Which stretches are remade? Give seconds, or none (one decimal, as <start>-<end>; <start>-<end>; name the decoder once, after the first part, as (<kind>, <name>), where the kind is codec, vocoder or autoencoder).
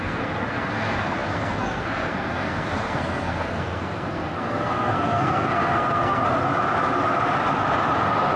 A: 0.0-6.2 (codec, SNAC)